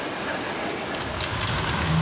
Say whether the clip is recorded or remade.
recorded